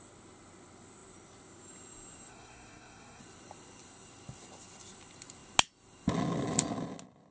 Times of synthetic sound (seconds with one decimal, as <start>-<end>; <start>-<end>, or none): 2.3-3.2